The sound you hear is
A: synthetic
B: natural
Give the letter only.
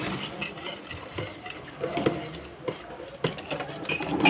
B